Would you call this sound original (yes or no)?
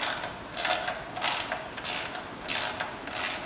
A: yes